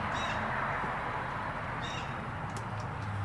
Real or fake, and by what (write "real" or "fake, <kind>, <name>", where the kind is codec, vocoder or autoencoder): real